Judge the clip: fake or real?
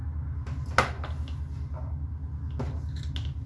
real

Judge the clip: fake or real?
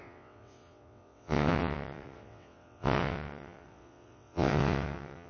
fake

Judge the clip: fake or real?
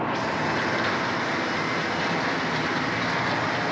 real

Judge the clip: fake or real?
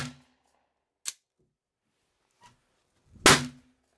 real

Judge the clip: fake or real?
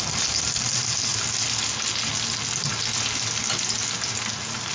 real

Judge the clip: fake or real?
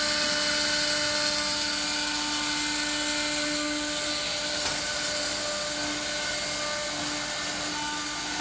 real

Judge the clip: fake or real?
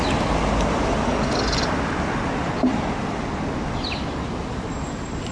real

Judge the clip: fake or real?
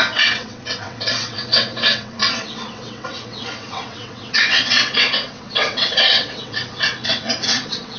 fake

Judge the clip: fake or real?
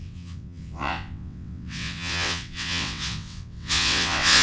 fake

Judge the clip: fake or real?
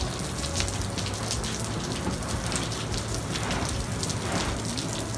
real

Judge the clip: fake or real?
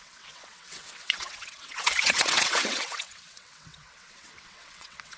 fake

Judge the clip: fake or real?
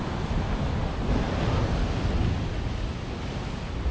real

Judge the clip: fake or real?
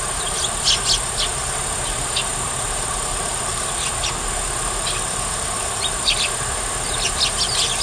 real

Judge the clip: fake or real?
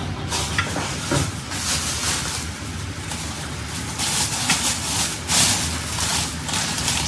real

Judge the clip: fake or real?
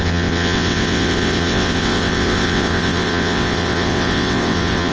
fake